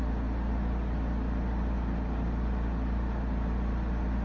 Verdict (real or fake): real